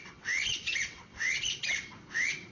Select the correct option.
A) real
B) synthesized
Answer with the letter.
B